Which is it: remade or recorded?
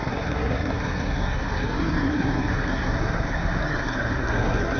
remade